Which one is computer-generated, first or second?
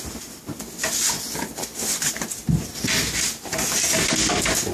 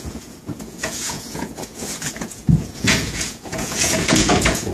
second